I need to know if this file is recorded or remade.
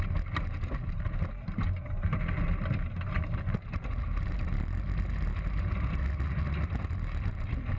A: recorded